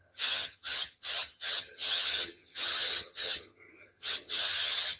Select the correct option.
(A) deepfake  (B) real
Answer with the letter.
A